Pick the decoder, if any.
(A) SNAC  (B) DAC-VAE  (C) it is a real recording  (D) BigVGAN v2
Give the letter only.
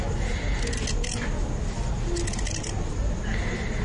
C